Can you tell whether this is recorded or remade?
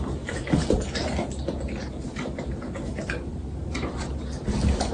recorded